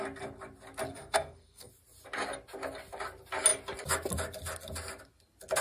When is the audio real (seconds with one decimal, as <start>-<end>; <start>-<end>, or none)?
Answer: 0.0-0.9; 1.7-5.6